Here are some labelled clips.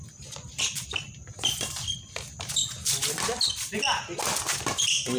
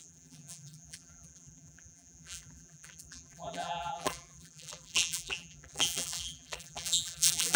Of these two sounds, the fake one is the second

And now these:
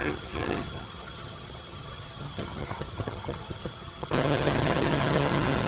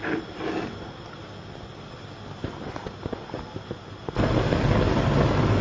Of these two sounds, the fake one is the first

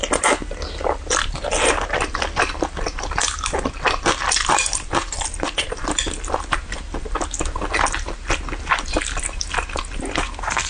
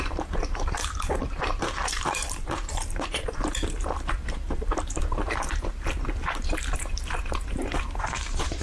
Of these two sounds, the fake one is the second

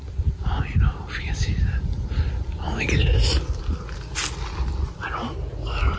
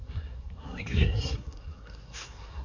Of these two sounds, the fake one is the second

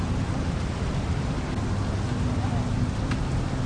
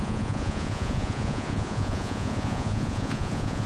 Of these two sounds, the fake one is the second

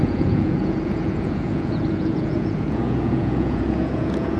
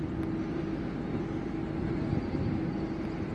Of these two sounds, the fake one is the first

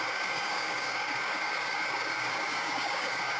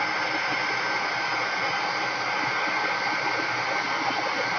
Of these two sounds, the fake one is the first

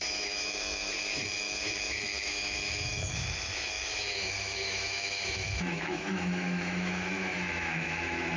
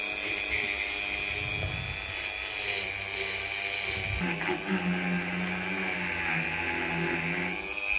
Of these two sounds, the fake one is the first